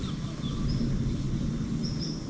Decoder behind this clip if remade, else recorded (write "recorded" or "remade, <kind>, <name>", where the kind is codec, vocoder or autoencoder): recorded